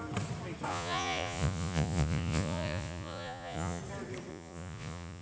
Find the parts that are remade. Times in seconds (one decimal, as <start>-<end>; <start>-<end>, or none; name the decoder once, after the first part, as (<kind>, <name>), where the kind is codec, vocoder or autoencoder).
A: 0.7-3.8 (vocoder, Vocos); 4.3-5.2